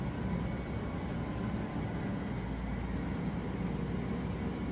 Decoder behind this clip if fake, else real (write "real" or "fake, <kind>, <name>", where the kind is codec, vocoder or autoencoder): real